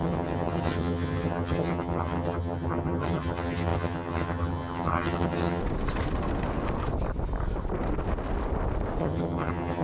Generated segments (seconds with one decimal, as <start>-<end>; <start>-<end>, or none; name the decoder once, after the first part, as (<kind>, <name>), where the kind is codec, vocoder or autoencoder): 0.0-5.6 (vocoder, HiFi-GAN); 9.0-9.8